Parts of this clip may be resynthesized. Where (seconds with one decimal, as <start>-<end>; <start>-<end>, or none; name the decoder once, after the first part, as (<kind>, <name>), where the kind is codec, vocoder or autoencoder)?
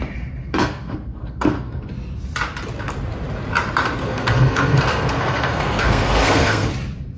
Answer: 0.4-1.9 (codec, SNAC); 4.0-6.7